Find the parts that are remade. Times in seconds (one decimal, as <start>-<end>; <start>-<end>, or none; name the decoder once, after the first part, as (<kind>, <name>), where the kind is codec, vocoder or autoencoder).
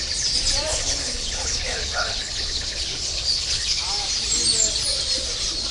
0.7-3.8 (codec, HILCodec)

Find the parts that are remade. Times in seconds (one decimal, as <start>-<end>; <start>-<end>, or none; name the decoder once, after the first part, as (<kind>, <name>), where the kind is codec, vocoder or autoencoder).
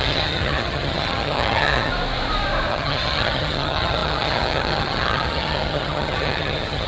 0.0-1.9 (vocoder, HiFi-GAN); 2.7-6.9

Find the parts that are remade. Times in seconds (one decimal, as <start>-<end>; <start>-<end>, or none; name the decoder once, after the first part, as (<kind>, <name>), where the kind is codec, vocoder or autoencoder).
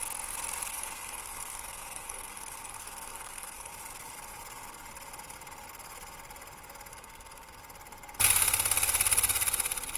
0.7-3.7 (codec, SNAC); 6.9-7.6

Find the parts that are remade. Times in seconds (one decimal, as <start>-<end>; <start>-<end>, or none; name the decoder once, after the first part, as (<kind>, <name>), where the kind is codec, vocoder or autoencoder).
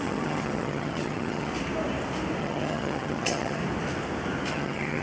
0.0-1.5 (vocoder, HiFi-GAN); 2.4-3.6; 4.5-5.0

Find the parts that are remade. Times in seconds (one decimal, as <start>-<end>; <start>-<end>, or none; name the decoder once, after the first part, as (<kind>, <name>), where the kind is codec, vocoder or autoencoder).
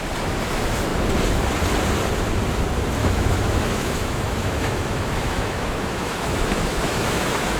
3.0-7.6 (autoencoder, DAC-VAE)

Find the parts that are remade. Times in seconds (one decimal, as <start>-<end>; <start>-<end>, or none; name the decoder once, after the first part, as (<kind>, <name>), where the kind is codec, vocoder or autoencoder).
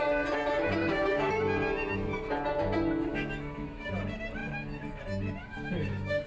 0.8-1.3 (autoencoder, DAC-VAE); 3.1-3.9; 5.4-6.3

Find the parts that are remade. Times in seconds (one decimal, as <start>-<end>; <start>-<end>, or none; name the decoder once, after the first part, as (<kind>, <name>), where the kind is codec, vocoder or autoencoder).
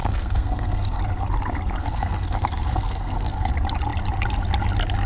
0.0-1.0 (codec, SNAC); 1.8-3.5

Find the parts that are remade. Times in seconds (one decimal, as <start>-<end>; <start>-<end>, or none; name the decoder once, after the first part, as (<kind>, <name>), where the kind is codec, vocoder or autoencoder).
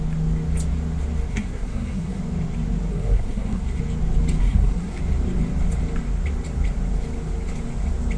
1.3-2.2 (codec, SNAC); 2.9-3.8; 4.4-5.0